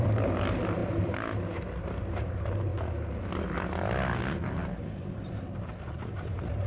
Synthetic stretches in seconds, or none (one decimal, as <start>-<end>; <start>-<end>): 0.0-0.8; 2.0-2.7; 5.0-6.7

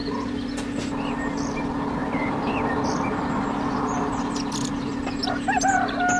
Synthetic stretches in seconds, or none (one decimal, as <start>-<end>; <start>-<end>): 2.0-5.7